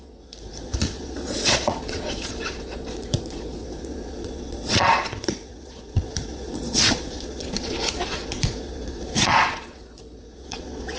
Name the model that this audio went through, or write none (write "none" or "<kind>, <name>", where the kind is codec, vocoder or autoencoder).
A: vocoder, Vocos